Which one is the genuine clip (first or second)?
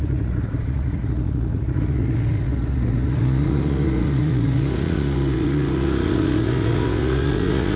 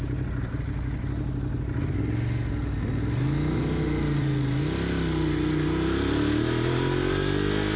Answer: second